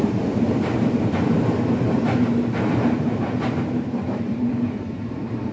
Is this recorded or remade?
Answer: remade